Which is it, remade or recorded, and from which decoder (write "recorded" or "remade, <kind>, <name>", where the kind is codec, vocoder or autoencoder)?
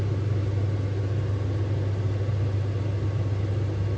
recorded